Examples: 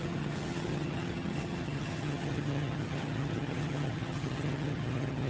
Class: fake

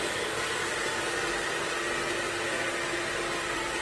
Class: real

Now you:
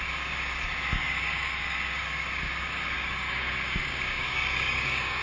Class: fake